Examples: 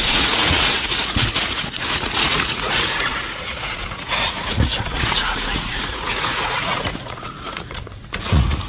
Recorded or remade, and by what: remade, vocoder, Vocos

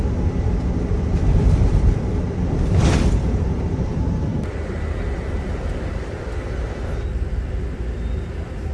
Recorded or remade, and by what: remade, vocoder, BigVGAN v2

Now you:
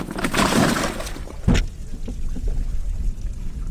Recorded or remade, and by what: recorded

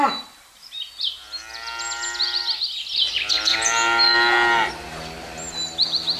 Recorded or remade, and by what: recorded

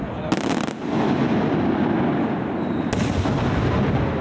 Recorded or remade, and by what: recorded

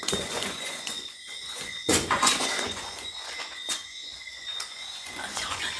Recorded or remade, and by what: remade, vocoder, Vocos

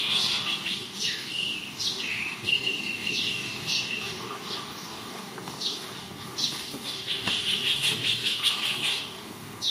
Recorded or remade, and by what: remade, codec, DAC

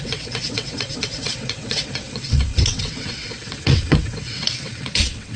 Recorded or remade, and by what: remade, vocoder, WaveNeXt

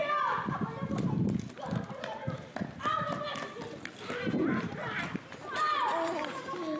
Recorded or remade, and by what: recorded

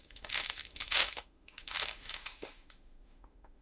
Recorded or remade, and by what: remade, autoencoder, DAC-VAE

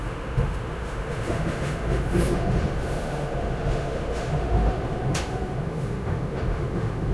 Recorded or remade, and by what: remade, autoencoder, DAC-VAE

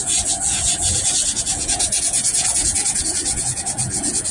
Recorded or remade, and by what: remade, vocoder, Vocos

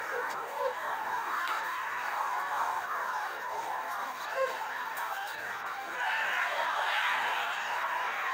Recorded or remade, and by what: remade, codec, DAC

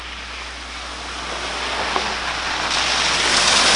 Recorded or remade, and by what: recorded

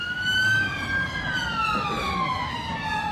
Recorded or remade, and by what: recorded